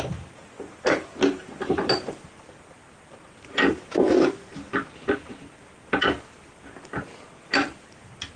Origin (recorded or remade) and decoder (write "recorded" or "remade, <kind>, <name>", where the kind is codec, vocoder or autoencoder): recorded